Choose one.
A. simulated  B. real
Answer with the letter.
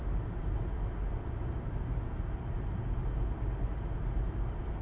B